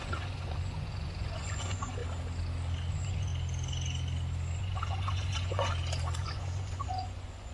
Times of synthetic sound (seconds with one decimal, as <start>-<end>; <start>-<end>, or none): 0.0-2.0; 2.9-3.3; 4.6-5.7; 6.2-7.5